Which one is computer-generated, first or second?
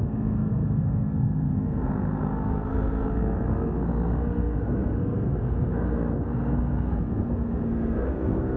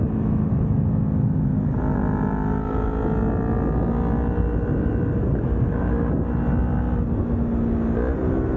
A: first